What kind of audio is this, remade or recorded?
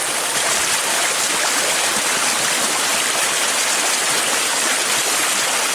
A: recorded